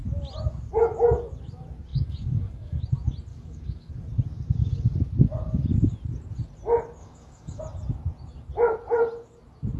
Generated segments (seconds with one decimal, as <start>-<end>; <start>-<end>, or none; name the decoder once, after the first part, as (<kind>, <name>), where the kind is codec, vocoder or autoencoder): 1.9-2.8 (codec, DAC); 3.3-3.9; 7.0-7.6

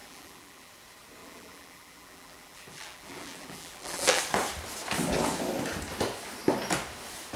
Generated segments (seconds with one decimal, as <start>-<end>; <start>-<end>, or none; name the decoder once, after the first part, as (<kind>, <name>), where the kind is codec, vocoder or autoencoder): 0.0-0.7 (vocoder, BigVGAN v2); 1.2-4.2

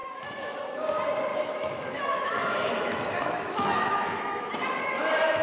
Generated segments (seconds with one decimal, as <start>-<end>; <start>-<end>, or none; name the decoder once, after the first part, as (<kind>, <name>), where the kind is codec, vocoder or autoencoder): 0.0-0.6 (autoencoder, DAC-VAE); 1.3-4.5

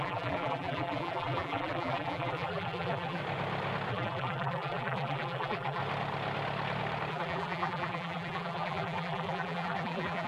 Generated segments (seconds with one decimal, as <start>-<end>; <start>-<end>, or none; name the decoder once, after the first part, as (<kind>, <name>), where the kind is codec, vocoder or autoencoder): 0.0-3.2 (vocoder, BigVGAN v2); 3.9-5.8; 7.1-10.3

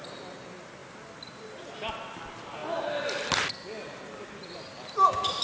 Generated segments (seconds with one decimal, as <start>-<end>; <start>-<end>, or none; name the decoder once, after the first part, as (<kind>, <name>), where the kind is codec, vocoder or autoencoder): none

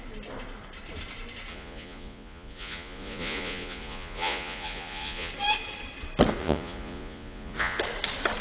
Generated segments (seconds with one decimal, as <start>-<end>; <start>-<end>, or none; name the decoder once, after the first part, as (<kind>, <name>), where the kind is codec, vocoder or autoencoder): 1.5-5.3 (vocoder, Vocos); 6.4-7.8